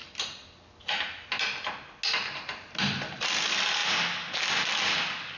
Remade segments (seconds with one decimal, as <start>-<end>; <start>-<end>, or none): 3.2-3.8; 4.5-5.4